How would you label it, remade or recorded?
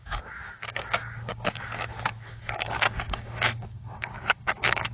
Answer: remade